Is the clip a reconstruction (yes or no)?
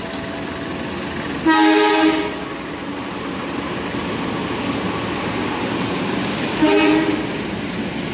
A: no